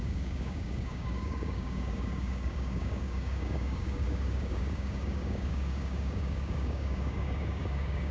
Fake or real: fake